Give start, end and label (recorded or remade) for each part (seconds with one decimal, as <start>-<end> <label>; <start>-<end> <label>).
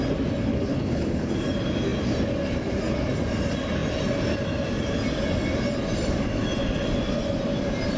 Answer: 0.0-0.5 recorded; 0.5-1.3 remade; 1.3-8.0 recorded